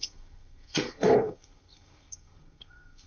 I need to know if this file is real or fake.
fake